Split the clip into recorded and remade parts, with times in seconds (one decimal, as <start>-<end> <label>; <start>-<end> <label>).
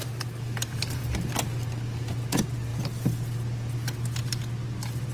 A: 0.0-5.1 recorded